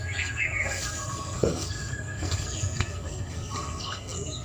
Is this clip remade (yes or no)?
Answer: yes